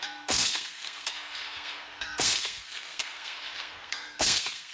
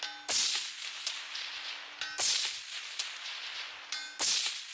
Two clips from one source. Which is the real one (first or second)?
second